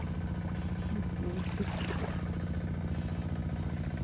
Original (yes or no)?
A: yes